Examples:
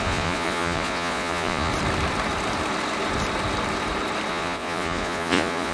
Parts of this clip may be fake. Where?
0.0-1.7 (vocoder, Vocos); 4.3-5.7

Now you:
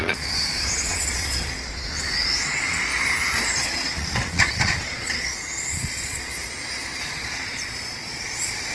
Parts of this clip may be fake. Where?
0.0-2.9 (vocoder, Vocos); 3.6-6.3; 7.0-8.7

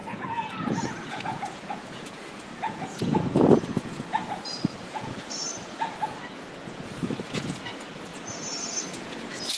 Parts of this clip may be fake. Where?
0.0-9.6 (vocoder, Vocos)

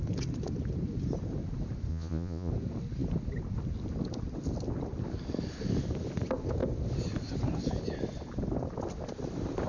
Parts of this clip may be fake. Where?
1.9-2.5 (vocoder, Vocos)

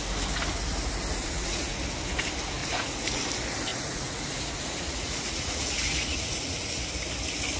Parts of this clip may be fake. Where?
1.2-1.8 (vocoder, Vocos); 2.6-3.2; 3.7-6.7

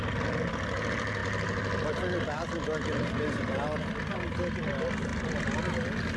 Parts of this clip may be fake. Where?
none

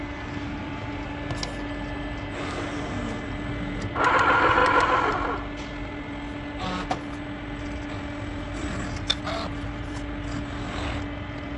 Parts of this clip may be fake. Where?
none

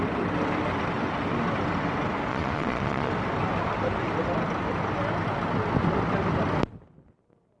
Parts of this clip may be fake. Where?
2.3-3.1 (vocoder, Vocos)